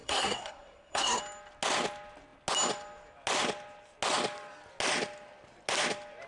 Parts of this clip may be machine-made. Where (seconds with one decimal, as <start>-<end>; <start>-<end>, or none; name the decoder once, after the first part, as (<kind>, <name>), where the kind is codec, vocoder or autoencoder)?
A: 0.0-1.2 (codec, SNAC)